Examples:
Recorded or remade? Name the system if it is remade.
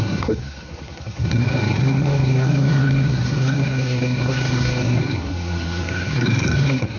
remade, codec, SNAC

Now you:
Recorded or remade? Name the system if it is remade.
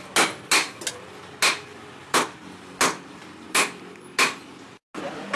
recorded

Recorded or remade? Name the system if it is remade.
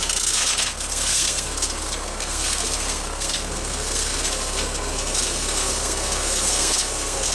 remade, codec, SNAC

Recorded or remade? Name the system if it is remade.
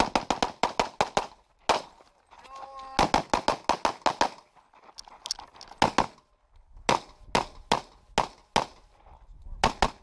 recorded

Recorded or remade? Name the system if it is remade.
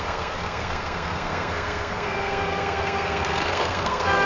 remade, codec, SNAC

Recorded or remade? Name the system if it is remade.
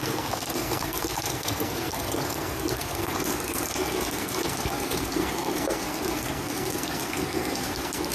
remade, codec, SNAC